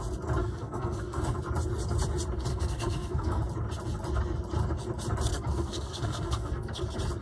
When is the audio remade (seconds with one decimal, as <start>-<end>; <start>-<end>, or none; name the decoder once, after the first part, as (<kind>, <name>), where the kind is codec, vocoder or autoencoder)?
0.4-1.2 (codec, SNAC); 2.5-3.4; 5.3-6.8